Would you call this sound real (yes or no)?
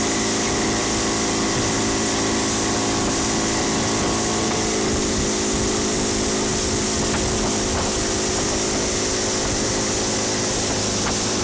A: yes